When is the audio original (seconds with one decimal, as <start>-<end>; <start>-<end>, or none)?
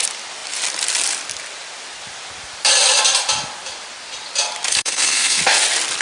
0.0-4.7; 5.4-6.0